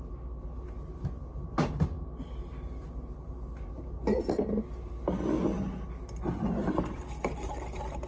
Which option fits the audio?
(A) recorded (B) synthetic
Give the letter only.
A